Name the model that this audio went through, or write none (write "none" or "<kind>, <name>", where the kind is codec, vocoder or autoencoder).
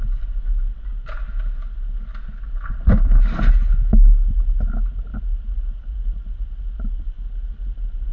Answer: none